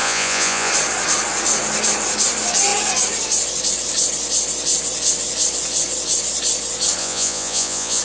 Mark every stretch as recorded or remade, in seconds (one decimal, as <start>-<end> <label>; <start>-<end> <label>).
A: 0.0-0.7 remade; 0.7-7.0 recorded; 7.0-8.0 remade